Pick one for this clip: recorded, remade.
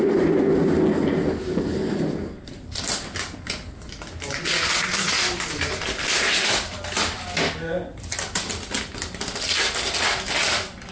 recorded